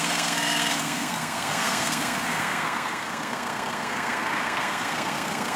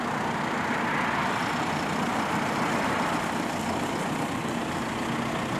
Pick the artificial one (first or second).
first